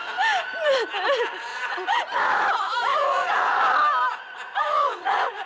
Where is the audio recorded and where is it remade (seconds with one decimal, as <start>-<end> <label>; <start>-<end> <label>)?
0.0-1.5 recorded; 1.5-3.6 remade; 3.6-4.1 recorded; 4.1-5.5 remade